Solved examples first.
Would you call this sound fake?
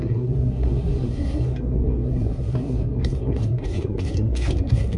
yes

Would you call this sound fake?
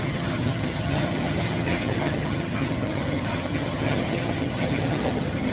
yes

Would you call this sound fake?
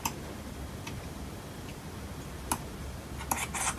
no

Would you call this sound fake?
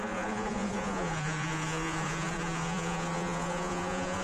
yes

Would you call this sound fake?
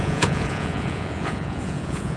yes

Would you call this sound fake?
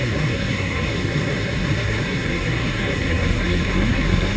yes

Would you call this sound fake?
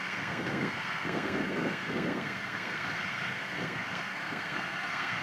yes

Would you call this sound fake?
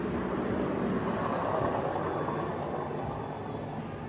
no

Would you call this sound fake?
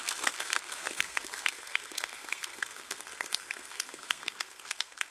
yes